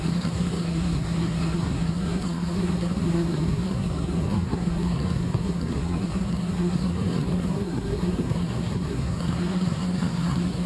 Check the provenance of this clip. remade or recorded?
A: remade